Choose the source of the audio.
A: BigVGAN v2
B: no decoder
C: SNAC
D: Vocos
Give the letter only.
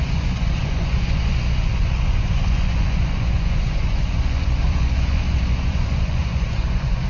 D